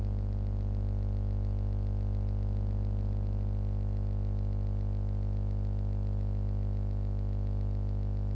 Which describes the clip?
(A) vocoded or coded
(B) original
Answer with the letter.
B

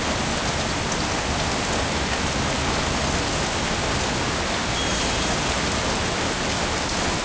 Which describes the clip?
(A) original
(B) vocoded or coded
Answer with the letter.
A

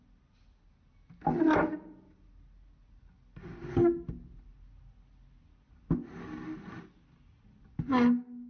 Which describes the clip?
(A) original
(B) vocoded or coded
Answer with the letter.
A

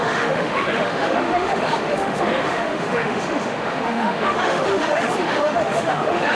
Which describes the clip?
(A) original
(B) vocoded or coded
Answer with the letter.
B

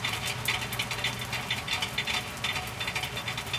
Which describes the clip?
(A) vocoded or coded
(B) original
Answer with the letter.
B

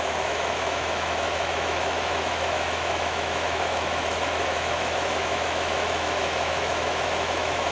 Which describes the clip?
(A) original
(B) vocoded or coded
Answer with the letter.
B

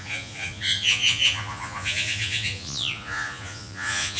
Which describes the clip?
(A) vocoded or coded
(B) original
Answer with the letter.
A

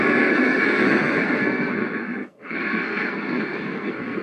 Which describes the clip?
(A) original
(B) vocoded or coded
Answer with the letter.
B